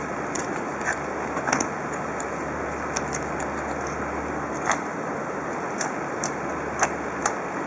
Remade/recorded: recorded